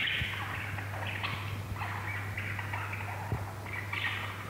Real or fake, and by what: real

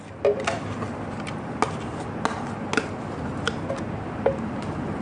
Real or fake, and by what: real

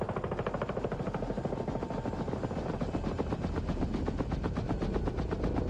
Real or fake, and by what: real